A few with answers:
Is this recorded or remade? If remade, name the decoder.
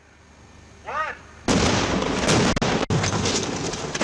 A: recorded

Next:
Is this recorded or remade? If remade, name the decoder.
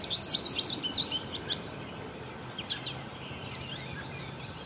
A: recorded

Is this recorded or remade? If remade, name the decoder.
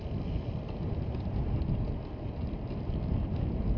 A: recorded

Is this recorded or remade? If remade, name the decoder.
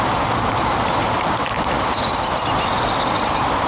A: recorded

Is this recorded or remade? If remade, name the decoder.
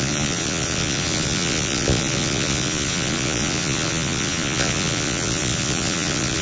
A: remade, vocoder, Vocos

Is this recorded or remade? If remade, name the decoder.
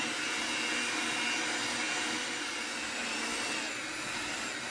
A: recorded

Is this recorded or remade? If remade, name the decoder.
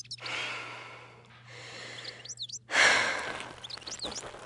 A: recorded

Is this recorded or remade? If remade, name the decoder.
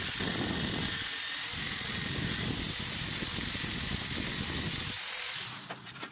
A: recorded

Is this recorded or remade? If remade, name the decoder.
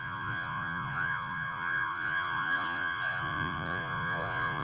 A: remade, vocoder, Vocos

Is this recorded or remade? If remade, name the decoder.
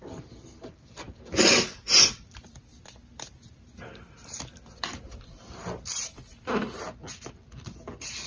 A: recorded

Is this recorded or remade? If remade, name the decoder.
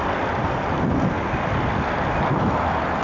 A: recorded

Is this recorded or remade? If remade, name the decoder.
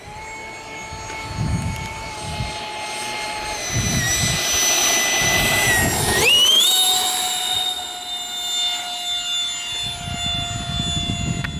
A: recorded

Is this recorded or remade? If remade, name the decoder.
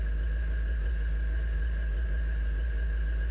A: recorded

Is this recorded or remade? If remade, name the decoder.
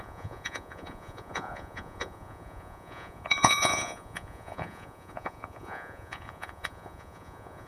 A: remade, vocoder, Vocos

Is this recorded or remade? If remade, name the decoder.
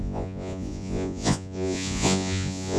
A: remade, vocoder, Vocos